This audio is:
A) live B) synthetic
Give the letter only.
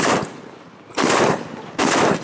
A